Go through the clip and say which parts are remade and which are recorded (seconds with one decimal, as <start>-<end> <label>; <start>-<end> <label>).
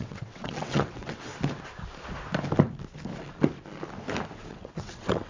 0.0-1.3 remade; 1.3-4.5 recorded; 4.5-5.3 remade